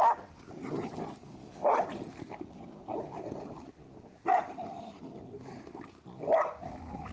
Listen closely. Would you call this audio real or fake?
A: real